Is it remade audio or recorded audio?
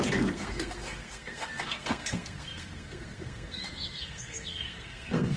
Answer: remade